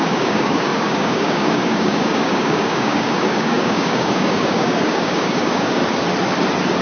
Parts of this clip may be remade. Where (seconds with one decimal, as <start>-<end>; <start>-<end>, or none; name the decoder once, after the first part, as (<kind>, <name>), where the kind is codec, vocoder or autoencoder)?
0.0-5.8 (codec, DAC)

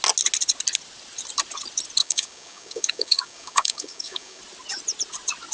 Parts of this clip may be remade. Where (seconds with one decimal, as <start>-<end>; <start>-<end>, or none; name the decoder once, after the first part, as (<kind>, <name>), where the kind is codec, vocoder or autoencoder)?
2.0-4.4 (codec, DAC)

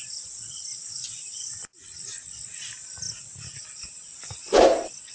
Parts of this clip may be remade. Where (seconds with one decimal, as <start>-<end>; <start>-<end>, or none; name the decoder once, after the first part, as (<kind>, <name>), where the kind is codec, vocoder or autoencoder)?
none

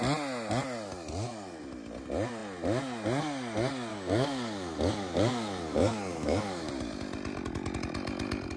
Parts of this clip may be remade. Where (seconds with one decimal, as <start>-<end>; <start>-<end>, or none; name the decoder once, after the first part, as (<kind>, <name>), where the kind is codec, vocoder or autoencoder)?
3.9-6.7 (codec, DAC)

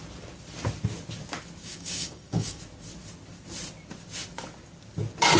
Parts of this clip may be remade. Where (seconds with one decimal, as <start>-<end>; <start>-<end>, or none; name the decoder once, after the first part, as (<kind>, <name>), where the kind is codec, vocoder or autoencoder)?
1.6-2.6 (codec, DAC)

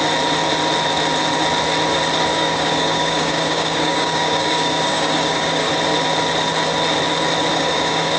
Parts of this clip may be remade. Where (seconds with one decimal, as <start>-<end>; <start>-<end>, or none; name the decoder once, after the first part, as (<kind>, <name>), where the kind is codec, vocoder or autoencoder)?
2.3-5.7 (codec, DAC); 7.5-8.2